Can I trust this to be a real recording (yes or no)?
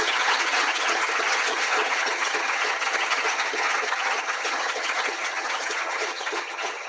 no